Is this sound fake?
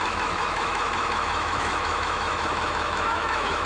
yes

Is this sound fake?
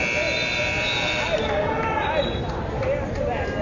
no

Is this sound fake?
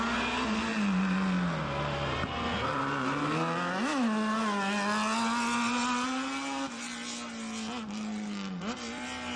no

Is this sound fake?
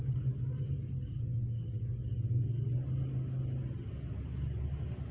no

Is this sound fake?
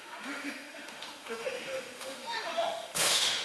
yes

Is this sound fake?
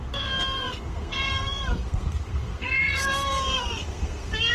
yes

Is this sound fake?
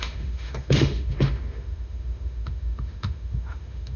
yes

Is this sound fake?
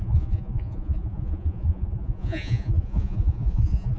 yes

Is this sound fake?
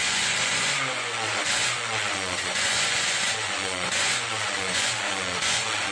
yes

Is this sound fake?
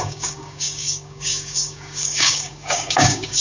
yes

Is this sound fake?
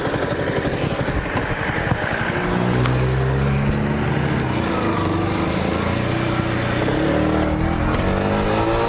no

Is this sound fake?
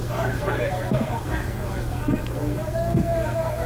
yes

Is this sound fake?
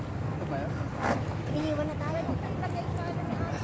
no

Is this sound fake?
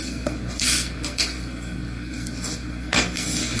yes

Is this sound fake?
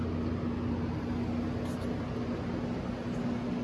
no